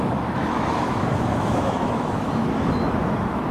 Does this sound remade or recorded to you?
remade